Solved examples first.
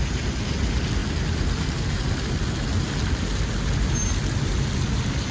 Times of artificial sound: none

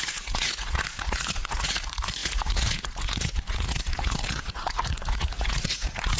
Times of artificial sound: 0.0-6.2 (vocoder, Vocos)